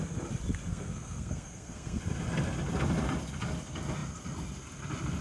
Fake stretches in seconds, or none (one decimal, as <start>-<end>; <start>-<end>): 0.7-2.0

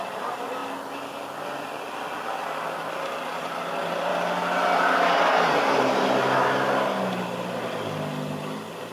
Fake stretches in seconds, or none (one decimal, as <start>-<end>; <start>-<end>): none